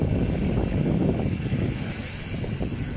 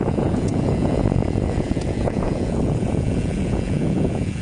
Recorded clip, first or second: first